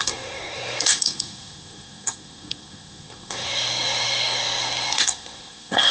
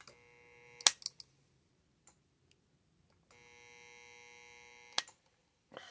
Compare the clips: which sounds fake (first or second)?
first